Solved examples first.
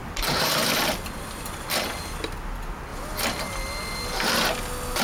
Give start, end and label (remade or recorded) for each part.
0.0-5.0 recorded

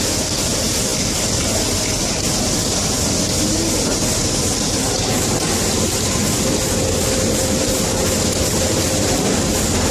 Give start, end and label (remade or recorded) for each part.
0.0-9.9 recorded

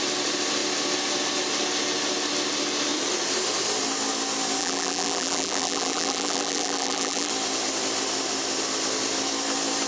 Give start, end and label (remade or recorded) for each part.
0.0-4.6 recorded; 4.6-7.3 remade; 7.3-9.9 recorded

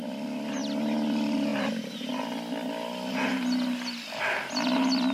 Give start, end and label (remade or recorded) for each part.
0.0-5.1 recorded

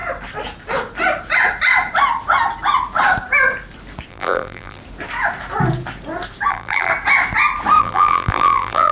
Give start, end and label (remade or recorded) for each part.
0.0-4.1 recorded; 4.1-4.8 remade; 4.8-6.5 recorded; 6.5-6.9 remade; 6.9-7.8 recorded; 7.8-8.9 remade

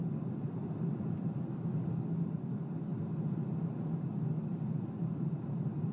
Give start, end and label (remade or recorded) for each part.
0.0-2.9 remade; 2.9-4.3 recorded; 4.3-5.9 remade

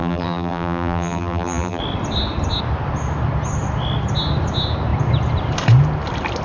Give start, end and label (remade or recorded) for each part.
0.0-1.8 remade; 1.8-6.4 recorded

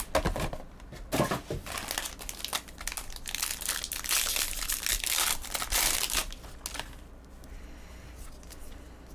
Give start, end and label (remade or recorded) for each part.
0.0-9.1 recorded